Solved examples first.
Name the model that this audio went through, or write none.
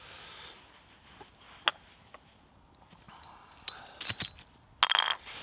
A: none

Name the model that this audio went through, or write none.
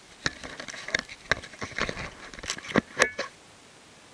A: none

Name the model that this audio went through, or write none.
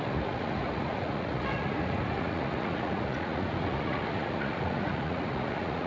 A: vocoder, Vocos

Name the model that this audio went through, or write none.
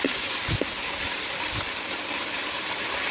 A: none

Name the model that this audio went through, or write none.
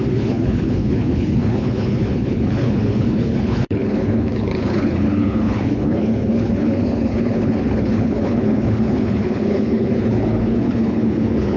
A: codec, HILCodec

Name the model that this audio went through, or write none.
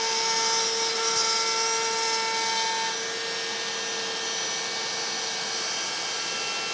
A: none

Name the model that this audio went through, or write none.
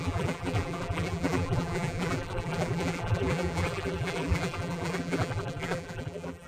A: vocoder, BigVGAN v2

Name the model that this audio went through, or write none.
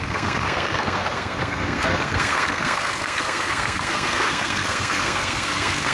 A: codec, SNAC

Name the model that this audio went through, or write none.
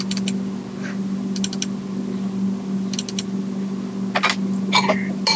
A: none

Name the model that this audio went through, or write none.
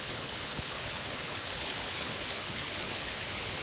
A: codec, HILCodec